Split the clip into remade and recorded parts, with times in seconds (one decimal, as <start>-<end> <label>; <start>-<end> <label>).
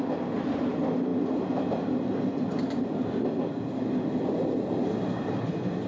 0.0-5.9 recorded